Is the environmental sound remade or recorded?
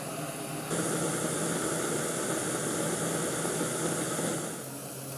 recorded